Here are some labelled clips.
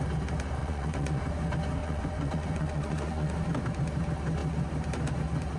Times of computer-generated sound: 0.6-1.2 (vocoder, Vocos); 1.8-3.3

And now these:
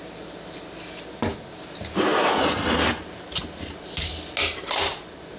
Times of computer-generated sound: none

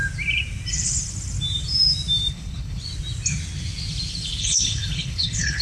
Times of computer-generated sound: 2.3-2.8 (codec, HILCodec); 4.4-5.6

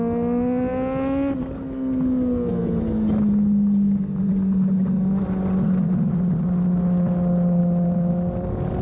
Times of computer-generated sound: 7.6-8.1 (autoencoder, DAC-VAE)

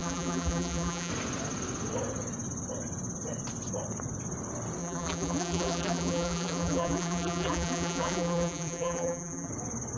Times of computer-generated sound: 0.0-1.1 (vocoder, BigVGAN v2); 4.8-9.5